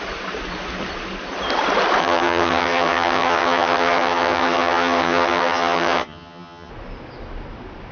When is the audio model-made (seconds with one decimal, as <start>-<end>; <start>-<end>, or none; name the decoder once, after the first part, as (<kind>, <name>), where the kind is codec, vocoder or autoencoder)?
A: 2.0-6.7 (vocoder, HiFi-GAN)